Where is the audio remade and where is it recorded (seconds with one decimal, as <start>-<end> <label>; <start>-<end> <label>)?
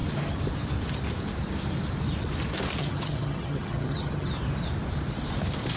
0.0-2.8 recorded; 2.8-4.3 remade; 4.3-5.8 recorded